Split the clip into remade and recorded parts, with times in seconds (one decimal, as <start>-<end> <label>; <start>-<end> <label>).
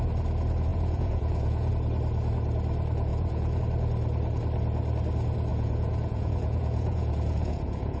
0.0-0.7 recorded; 0.7-1.7 remade; 1.7-3.1 recorded; 3.1-3.6 remade; 3.6-5.5 recorded; 5.5-8.0 remade